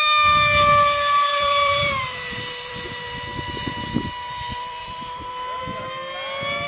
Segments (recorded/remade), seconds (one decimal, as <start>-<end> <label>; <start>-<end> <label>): 0.0-1.3 recorded; 1.3-5.3 remade; 5.3-6.7 recorded